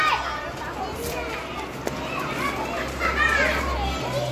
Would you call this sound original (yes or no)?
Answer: yes